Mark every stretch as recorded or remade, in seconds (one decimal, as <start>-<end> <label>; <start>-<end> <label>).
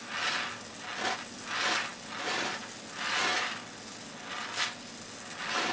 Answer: 0.0-5.7 recorded